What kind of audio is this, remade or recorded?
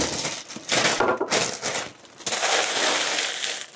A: recorded